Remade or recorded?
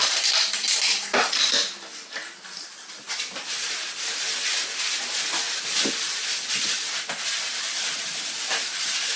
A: recorded